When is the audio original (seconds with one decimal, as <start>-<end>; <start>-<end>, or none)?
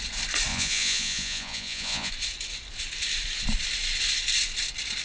0.0-0.5; 2.1-5.0